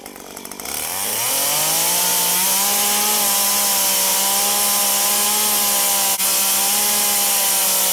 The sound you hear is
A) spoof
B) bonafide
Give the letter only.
B